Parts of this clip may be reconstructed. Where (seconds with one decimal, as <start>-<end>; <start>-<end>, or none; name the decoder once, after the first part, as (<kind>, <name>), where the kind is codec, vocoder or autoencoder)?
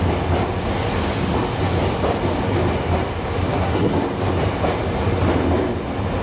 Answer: 3.4-3.9 (codec, SNAC)